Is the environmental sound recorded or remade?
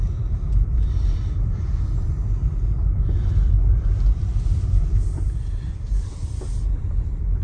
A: remade